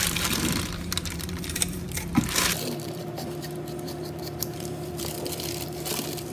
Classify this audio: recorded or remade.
remade